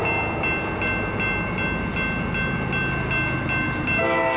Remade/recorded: recorded